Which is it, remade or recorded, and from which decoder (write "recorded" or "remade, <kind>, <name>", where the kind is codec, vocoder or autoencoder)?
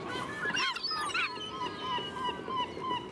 remade, vocoder, BigVGAN v2